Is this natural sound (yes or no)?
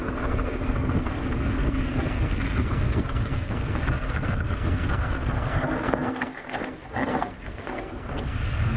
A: no